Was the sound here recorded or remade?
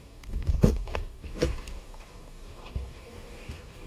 remade